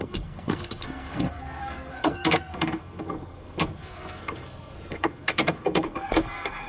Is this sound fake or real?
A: fake